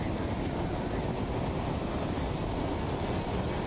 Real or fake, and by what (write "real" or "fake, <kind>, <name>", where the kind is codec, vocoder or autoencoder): real